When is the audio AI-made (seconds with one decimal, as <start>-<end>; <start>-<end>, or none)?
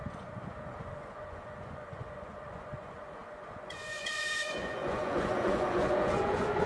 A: 0.0-6.7